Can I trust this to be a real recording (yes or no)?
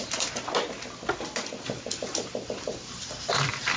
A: yes